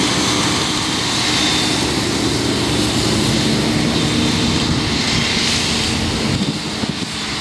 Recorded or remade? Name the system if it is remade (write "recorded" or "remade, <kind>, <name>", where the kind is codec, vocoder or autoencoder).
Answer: recorded